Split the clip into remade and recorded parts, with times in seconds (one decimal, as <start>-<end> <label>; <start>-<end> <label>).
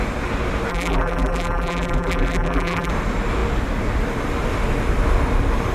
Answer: 0.0-0.7 recorded; 0.7-2.9 remade; 2.9-5.7 recorded